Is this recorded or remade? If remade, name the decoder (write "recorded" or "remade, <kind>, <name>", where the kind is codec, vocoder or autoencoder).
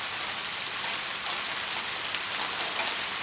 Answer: recorded